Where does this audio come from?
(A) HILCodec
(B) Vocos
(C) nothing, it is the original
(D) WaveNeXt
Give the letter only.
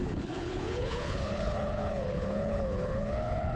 A